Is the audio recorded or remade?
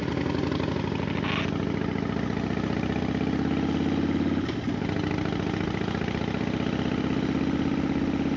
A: recorded